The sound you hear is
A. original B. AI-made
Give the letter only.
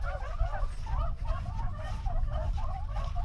B